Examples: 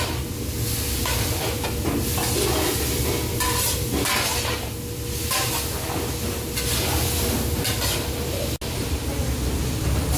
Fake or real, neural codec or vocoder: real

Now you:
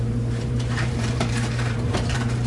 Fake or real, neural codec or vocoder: fake, vocoder, BigVGAN v2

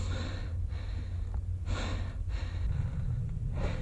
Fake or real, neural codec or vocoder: real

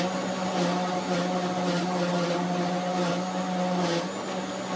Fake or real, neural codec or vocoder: real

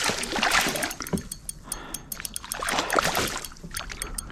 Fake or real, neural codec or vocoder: real